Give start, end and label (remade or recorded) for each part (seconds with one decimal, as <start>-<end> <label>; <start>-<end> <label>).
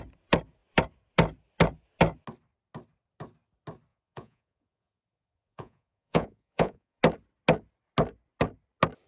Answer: 0.0-3.9 recorded; 3.9-7.0 remade; 7.0-9.1 recorded